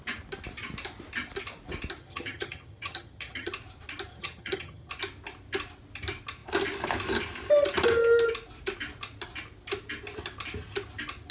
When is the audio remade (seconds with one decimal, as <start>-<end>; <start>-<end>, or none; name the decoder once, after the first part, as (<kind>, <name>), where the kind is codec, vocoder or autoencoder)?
2.0-3.5 (vocoder, HiFi-GAN); 4.1-4.9